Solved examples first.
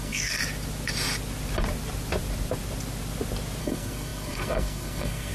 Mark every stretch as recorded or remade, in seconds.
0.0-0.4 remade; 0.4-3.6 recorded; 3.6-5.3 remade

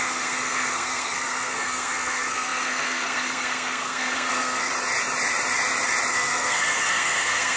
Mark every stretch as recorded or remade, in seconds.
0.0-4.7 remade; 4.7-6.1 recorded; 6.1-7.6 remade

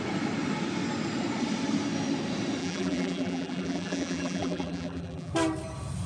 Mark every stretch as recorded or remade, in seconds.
0.0-2.6 recorded; 2.6-5.3 remade; 5.3-6.1 recorded

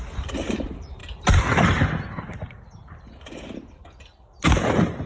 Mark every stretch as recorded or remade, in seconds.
0.0-5.1 recorded

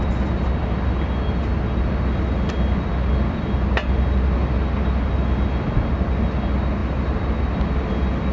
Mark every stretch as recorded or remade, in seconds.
0.0-8.3 recorded

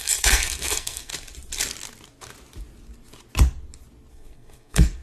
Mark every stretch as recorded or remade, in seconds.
0.0-1.1 remade; 1.1-4.1 recorded; 4.1-5.0 remade

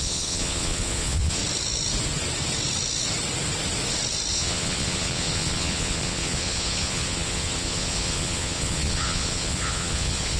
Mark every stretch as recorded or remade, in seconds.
0.0-1.4 remade; 1.4-4.3 recorded; 4.3-10.4 remade

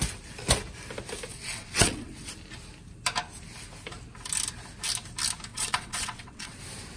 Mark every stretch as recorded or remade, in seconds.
0.0-1.3 recorded; 1.3-2.3 remade; 2.3-5.5 recorded; 5.5-6.6 remade; 6.6-7.0 recorded